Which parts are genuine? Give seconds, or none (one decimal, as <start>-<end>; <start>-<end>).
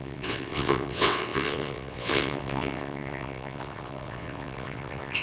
none